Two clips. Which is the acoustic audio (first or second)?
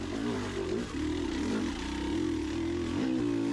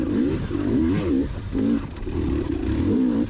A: first